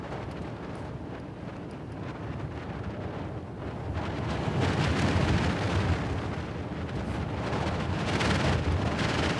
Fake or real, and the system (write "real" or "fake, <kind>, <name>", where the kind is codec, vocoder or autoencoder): real